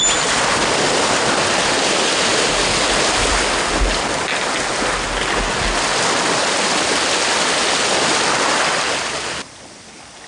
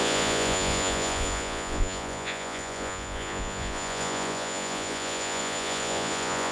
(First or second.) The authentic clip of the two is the first